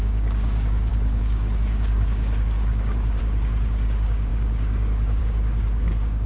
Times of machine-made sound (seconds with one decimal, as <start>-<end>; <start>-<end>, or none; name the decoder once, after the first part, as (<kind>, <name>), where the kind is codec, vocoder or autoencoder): 0.0-6.3 (codec, DAC)